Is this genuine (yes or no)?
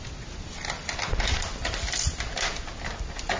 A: yes